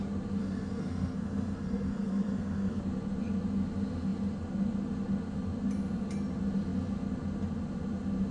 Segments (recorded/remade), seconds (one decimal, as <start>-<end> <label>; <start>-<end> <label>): 0.0-0.4 recorded; 0.4-2.8 remade; 2.8-8.3 recorded